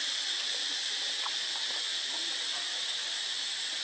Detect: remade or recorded recorded